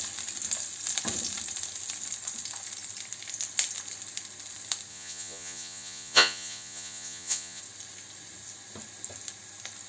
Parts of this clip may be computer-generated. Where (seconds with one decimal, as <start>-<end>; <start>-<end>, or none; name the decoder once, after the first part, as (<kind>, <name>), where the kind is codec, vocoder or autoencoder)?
4.9-7.6 (vocoder, Vocos)